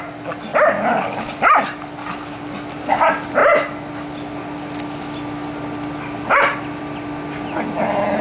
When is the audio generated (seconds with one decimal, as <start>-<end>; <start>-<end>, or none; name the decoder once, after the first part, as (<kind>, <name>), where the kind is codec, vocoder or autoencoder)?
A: none